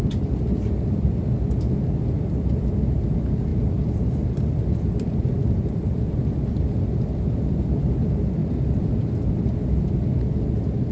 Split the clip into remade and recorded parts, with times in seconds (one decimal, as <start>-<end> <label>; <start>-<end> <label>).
0.0-3.5 recorded; 3.5-6.1 remade; 6.1-8.4 recorded; 8.4-9.3 remade; 9.3-10.9 recorded